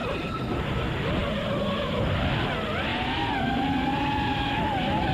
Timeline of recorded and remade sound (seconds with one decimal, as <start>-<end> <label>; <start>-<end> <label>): 0.0-0.6 remade; 0.6-2.9 recorded; 2.9-3.4 remade; 3.4-5.1 recorded